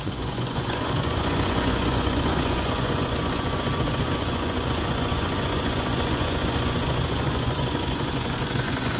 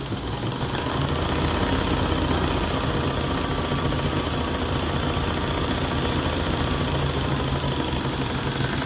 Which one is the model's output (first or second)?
first